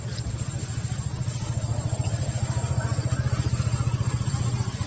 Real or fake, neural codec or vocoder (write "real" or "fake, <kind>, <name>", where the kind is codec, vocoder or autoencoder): real